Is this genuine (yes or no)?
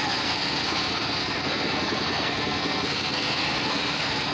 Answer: no